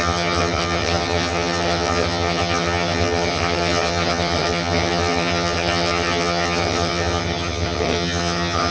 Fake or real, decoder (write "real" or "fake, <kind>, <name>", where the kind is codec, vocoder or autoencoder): fake, vocoder, HiFi-GAN